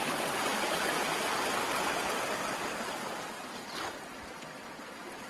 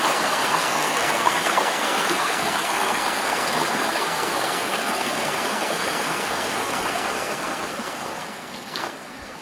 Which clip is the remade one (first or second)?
second